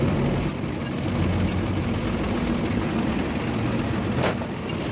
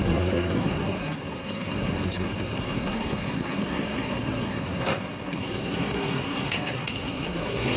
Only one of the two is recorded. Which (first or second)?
first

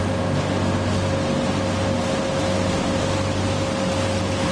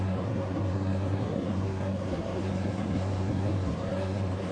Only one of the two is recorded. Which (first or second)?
first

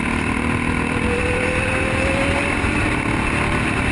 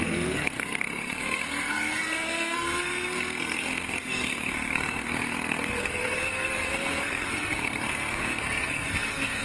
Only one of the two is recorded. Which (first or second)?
first